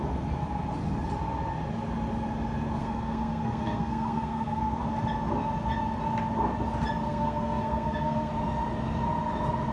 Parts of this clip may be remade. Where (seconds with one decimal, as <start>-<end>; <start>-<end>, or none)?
2.8-4.8; 7.1-8.3